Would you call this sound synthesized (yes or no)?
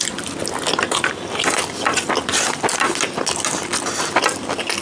no